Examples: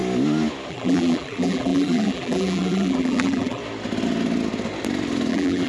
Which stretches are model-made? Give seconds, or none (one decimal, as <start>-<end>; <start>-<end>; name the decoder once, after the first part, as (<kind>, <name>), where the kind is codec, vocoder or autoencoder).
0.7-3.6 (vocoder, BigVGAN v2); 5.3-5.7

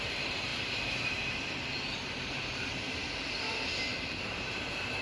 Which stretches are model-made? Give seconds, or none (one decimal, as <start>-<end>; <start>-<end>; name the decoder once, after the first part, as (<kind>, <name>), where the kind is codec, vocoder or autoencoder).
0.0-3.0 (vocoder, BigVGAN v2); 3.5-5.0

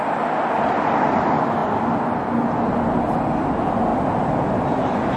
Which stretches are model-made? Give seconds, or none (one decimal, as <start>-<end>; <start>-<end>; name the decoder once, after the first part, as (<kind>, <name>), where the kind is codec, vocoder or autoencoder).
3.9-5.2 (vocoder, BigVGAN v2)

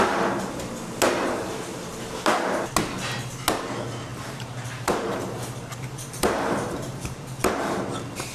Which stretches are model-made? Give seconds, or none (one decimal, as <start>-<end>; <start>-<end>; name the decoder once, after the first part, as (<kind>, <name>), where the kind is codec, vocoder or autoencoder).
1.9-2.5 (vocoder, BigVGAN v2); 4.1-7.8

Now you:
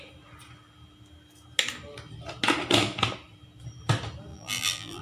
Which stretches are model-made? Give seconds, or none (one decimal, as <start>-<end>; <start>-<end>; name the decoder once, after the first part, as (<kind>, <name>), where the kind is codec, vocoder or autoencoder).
4.3-5.0 (vocoder, BigVGAN v2)

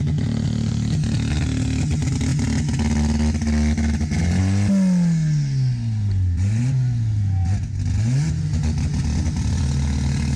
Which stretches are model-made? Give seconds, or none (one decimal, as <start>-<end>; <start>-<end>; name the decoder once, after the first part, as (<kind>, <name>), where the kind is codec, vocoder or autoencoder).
none

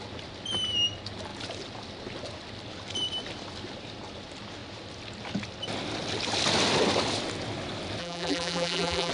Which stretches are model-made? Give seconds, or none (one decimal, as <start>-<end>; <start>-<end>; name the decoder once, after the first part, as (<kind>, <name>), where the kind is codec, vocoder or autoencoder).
8.0-9.1 (vocoder, BigVGAN v2)

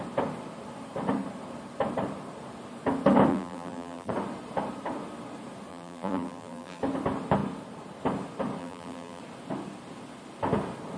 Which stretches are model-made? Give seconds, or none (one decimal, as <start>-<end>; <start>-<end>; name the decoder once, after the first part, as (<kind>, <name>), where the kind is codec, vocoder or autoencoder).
3.3-4.1 (vocoder, BigVGAN v2); 5.7-6.8; 8.6-9.2